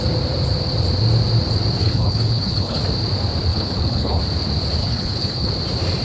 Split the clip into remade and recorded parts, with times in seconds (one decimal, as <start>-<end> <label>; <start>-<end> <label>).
0.0-1.8 recorded; 1.8-2.8 remade; 2.8-3.5 recorded; 3.5-4.2 remade; 4.2-4.8 recorded; 4.8-5.5 remade; 5.5-6.0 recorded